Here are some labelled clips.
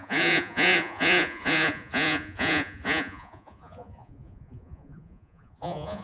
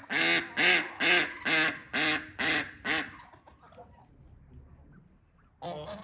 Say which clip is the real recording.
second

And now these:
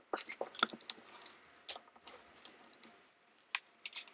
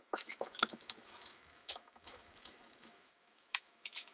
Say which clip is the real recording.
first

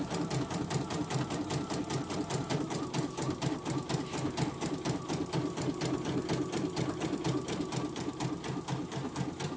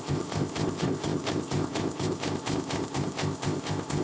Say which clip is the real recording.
first